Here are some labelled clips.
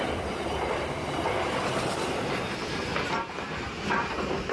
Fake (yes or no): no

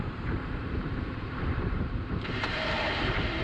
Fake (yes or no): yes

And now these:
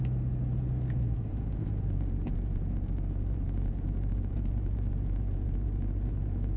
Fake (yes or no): yes